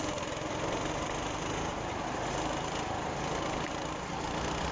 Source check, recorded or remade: recorded